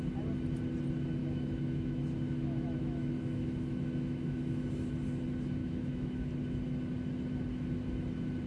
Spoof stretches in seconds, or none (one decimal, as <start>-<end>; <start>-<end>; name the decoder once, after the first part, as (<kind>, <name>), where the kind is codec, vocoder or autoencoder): 1.2-4.6 (autoencoder, DAC-VAE); 5.6-6.3